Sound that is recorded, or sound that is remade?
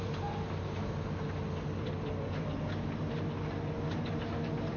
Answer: recorded